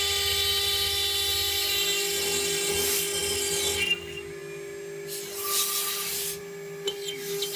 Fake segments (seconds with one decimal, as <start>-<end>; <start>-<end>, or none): none